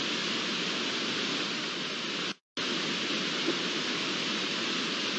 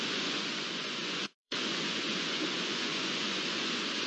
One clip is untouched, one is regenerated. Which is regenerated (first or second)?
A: second